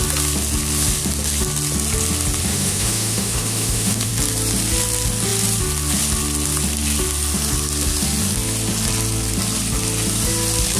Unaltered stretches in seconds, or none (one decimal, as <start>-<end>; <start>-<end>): 0.0-2.5; 4.1-10.8